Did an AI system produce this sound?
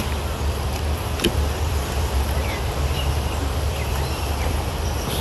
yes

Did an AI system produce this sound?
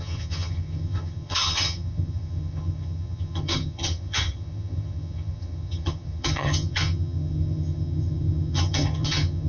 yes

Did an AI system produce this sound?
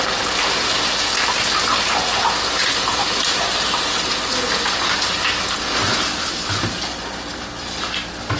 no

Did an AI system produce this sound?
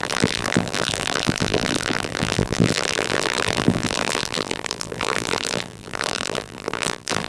yes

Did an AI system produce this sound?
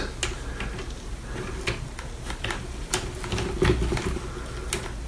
no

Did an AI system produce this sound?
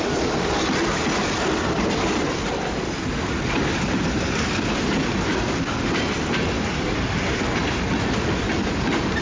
no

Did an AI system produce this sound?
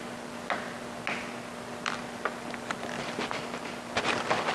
no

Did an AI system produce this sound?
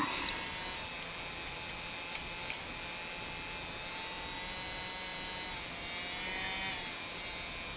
no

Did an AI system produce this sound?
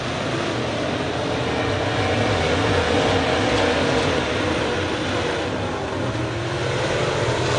no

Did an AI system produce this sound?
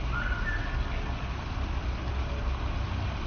no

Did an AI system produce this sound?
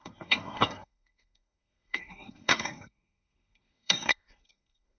yes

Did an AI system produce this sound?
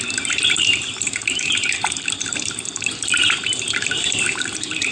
yes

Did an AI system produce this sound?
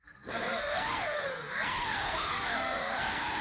yes